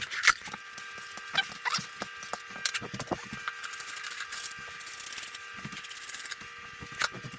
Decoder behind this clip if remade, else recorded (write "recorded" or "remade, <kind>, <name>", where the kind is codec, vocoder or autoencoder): recorded